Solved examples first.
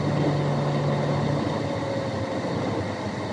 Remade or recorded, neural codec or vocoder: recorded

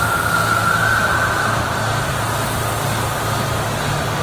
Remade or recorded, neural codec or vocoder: recorded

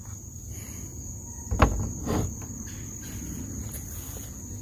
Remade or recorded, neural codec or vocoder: recorded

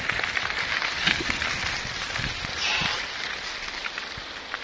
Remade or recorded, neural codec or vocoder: recorded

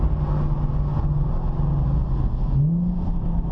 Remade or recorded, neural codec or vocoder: recorded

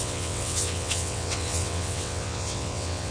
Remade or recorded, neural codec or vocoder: remade, vocoder, WaveNeXt